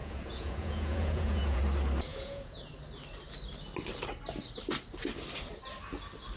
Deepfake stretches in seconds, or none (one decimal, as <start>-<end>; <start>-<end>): 0.0-1.6; 2.1-2.7